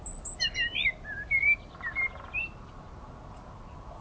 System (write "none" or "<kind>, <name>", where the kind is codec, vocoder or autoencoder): none